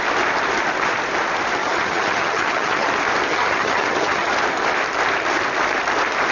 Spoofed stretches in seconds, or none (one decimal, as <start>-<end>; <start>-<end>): 1.6-2.9; 3.3-4.3